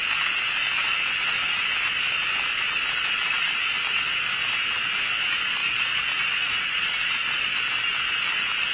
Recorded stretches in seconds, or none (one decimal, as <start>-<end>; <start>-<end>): 0.0-5.6; 7.0-8.7